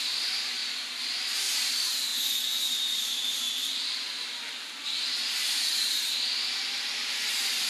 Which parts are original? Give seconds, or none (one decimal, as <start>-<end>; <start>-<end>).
0.0-7.7